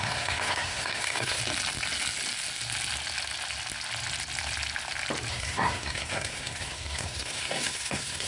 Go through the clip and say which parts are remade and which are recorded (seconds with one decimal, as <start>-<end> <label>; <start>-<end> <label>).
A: 0.0-1.4 remade; 1.4-5.3 recorded; 5.3-8.3 remade